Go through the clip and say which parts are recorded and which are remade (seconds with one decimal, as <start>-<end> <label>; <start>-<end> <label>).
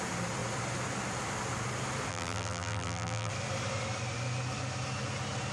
0.0-2.1 recorded; 2.1-3.3 remade; 3.3-5.5 recorded